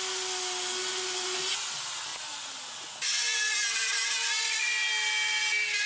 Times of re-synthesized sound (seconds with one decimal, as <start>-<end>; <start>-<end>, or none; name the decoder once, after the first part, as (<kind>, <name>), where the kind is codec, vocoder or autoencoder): 2.1-2.9 (vocoder, BigVGAN v2)